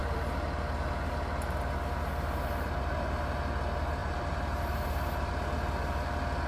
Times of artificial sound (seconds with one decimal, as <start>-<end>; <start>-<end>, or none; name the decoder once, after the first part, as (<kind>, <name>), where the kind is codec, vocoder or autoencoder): 4.0-5.3 (vocoder, BigVGAN v2)